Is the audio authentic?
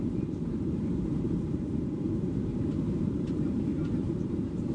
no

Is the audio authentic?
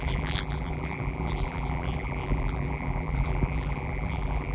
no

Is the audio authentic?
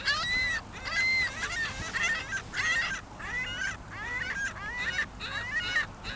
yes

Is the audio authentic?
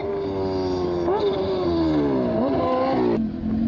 yes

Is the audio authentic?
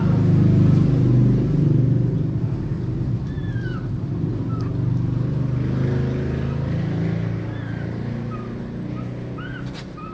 yes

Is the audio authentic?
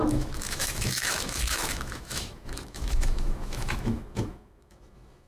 no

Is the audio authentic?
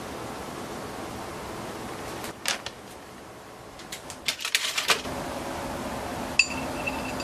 yes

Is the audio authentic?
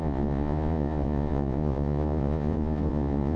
no